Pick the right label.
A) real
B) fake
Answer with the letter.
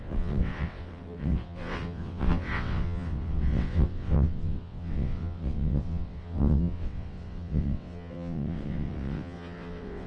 B